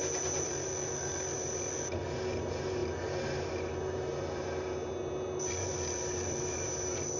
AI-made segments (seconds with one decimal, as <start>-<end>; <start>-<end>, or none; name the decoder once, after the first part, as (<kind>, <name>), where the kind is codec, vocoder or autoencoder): none